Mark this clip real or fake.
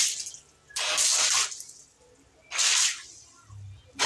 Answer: real